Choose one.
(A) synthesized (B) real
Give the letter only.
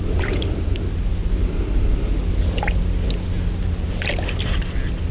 B